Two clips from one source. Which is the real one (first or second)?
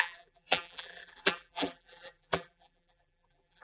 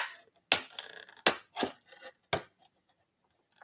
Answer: second